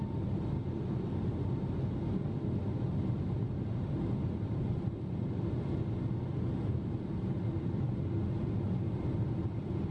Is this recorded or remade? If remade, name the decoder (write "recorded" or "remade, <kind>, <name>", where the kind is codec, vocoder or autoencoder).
recorded